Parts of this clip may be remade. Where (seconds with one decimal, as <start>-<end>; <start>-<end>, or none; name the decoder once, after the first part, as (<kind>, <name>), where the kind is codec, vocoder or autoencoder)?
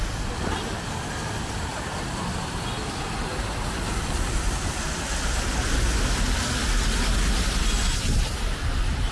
none